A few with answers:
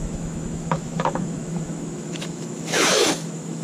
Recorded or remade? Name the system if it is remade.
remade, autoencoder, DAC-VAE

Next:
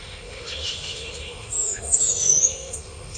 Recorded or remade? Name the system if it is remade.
remade, autoencoder, DAC-VAE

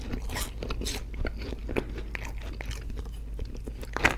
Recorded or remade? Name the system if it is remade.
recorded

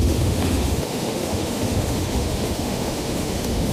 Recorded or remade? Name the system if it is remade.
remade, autoencoder, DAC-VAE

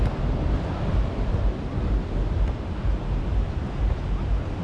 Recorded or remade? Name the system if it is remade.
recorded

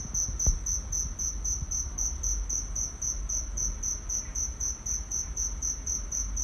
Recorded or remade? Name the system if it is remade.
recorded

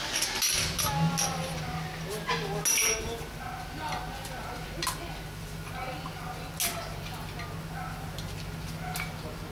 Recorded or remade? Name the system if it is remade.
recorded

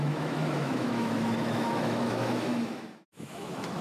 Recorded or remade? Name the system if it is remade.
remade, autoencoder, DAC-VAE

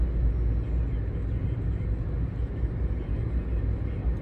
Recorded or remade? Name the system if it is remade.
recorded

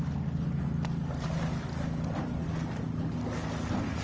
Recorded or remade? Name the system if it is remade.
recorded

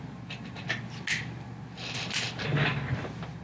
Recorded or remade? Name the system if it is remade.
recorded